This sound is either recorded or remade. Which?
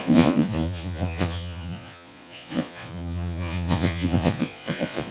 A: remade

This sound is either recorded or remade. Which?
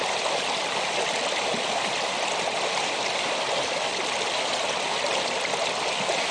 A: recorded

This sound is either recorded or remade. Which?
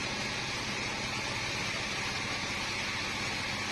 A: recorded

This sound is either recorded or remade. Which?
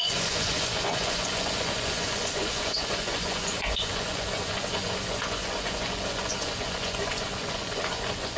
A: remade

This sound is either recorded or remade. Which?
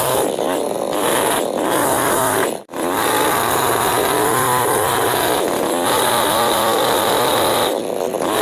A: recorded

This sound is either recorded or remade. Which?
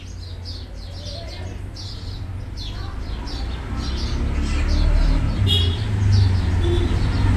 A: recorded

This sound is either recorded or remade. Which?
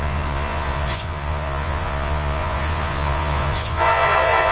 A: remade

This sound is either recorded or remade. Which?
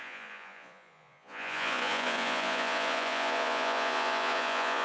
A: remade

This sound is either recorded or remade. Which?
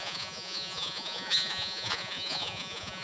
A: remade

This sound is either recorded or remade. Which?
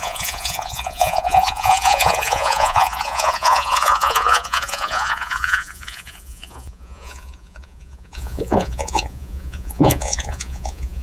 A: remade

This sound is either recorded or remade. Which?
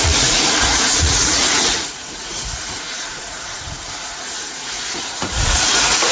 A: remade